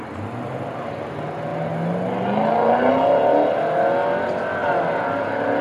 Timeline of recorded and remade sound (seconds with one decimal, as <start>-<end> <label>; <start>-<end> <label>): 0.0-5.6 recorded